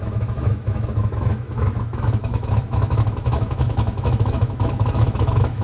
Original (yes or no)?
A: no